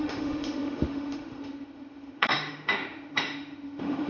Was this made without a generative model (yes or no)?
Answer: no